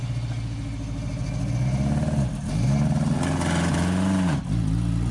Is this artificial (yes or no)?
no